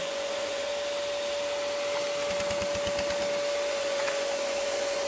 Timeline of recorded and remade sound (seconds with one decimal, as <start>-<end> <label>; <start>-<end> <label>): 0.0-0.7 remade; 0.7-3.7 recorded; 3.7-5.1 remade